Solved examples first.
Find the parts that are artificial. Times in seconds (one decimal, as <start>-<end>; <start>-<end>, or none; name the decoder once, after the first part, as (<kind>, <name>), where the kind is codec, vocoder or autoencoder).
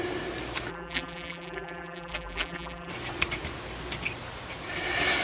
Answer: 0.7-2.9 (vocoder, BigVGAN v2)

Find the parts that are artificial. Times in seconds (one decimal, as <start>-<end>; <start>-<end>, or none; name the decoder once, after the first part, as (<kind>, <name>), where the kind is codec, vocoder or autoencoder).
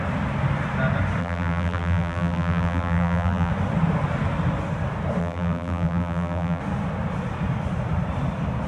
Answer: 1.2-3.5 (vocoder, BigVGAN v2); 5.2-6.6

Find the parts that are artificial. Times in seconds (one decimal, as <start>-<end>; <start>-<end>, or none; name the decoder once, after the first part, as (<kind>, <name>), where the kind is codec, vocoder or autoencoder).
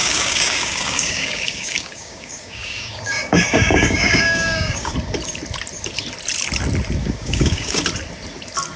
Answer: 0.0-4.9 (codec, DAC); 7.0-7.8